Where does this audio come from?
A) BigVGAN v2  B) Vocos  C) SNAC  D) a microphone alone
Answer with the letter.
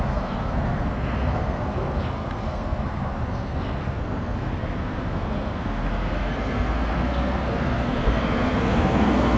C